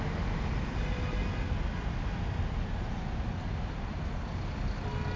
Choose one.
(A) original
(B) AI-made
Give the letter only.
A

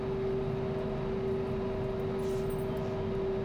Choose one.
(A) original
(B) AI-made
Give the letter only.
A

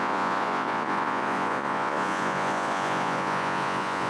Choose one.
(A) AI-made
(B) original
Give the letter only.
A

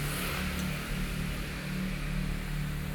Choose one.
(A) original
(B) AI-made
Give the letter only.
A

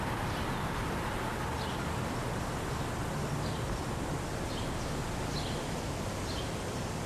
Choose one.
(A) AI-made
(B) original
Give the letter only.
B